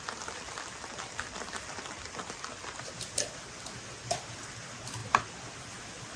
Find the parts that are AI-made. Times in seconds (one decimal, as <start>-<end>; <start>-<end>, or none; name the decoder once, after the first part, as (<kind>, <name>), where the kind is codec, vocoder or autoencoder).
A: none